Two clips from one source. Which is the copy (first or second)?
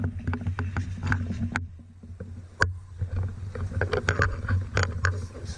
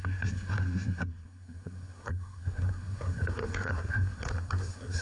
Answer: second